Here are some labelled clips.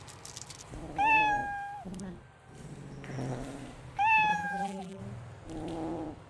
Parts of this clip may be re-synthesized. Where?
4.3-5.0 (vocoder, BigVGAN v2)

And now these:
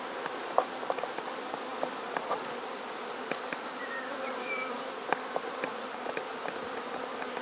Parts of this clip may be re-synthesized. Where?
0.0-7.4 (vocoder, BigVGAN v2)